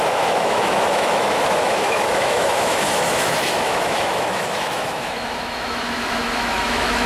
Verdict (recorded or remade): remade